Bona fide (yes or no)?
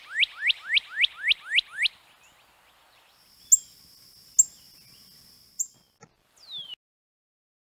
yes